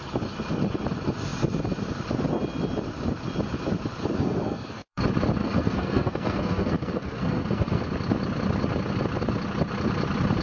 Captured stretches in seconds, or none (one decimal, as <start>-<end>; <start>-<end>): 0.0-4.0; 5.0-5.4; 7.8-10.4